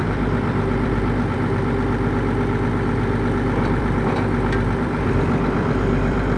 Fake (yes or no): yes